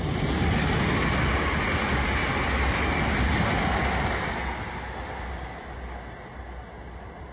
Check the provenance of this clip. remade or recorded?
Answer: recorded